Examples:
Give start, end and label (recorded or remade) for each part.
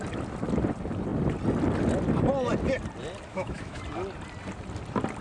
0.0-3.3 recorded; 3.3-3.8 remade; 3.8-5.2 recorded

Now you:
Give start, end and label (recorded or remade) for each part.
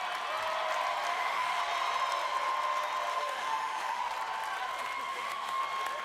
0.0-1.1 recorded; 1.1-1.6 remade; 1.6-3.1 recorded; 3.1-4.0 remade; 4.0-5.1 recorded; 5.1-5.6 remade; 5.6-6.0 recorded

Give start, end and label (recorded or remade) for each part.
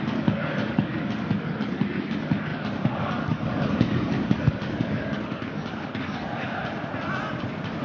0.0-6.6 remade; 6.6-7.8 recorded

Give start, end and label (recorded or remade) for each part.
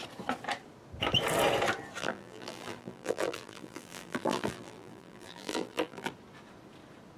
0.0-2.0 recorded; 2.0-6.1 remade; 6.1-7.2 recorded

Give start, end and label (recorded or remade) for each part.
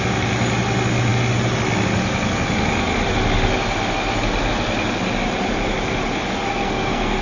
0.0-6.5 recorded; 6.5-7.2 remade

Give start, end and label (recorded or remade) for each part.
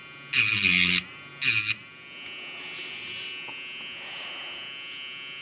0.0-5.4 recorded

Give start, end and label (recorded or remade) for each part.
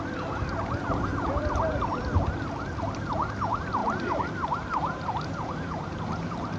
0.0-3.8 recorded; 3.8-6.0 remade; 6.0-6.6 recorded